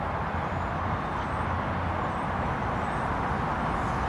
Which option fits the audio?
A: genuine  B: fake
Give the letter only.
A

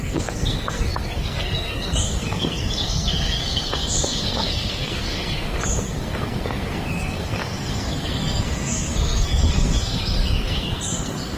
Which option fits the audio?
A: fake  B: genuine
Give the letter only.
A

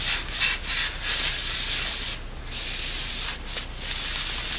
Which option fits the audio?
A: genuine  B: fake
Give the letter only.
A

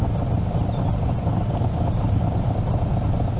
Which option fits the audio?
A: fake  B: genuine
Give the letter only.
B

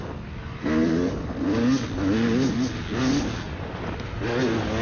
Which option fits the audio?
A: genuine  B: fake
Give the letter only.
A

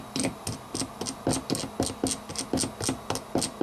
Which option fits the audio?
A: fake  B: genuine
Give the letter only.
B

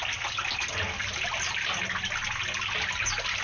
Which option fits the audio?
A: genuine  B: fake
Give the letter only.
A